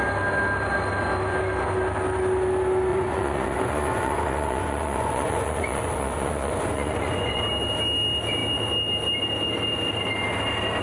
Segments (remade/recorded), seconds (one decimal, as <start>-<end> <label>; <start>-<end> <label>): 0.0-2.9 recorded; 2.9-7.4 remade; 7.4-10.8 recorded